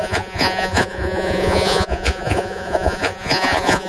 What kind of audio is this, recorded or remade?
remade